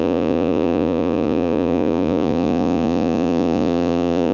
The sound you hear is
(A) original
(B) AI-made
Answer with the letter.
B